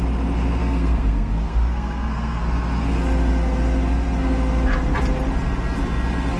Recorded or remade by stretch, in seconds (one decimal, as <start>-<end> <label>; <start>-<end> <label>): 0.0-0.6 recorded; 0.6-2.4 remade; 2.4-6.4 recorded